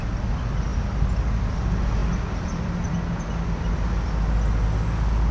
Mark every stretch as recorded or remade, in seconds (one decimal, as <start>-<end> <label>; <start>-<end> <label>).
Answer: 0.0-5.3 recorded